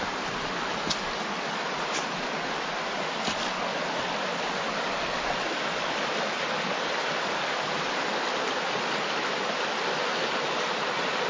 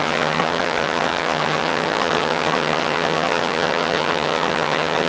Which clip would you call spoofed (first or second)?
second